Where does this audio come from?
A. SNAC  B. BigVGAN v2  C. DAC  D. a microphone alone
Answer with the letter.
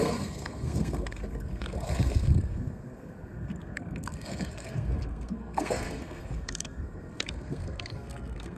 A